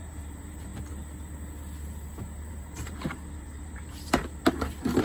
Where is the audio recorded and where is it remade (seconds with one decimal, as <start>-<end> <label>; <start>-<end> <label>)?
0.0-0.7 remade; 0.7-2.5 recorded; 2.5-4.2 remade; 4.2-5.0 recorded